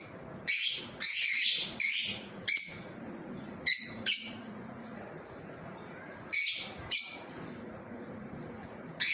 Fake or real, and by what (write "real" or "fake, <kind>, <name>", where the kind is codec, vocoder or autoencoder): fake, vocoder, Vocos